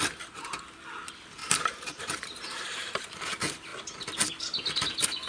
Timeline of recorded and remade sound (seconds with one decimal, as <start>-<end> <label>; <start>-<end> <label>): 0.0-1.4 recorded; 1.4-3.2 remade; 3.2-5.3 recorded